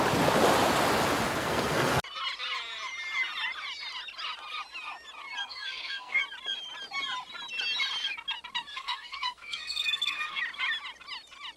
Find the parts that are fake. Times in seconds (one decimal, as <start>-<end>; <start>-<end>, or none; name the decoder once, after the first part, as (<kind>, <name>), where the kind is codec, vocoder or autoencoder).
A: 1.4-2.0 (codec, SNAC); 5.4-6.2; 8.7-10.4